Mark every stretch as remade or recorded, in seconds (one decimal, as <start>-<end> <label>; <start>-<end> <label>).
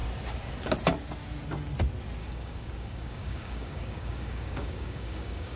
0.0-2.2 recorded; 2.2-5.6 remade